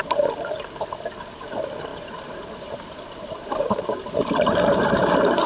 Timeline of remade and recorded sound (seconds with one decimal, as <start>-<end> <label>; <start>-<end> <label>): 0.0-1.9 recorded; 1.9-2.5 remade; 2.5-3.4 recorded; 3.4-5.5 remade